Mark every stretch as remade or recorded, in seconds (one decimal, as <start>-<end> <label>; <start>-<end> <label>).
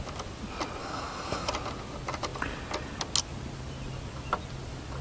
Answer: 0.0-0.8 recorded; 0.8-1.5 remade; 1.5-5.0 recorded